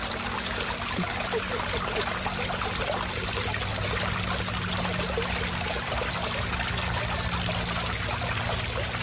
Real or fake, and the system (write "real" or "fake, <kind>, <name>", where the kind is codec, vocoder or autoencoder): real